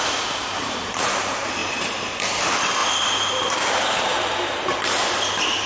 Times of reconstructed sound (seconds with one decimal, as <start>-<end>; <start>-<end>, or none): 0.0-2.8; 3.7-5.7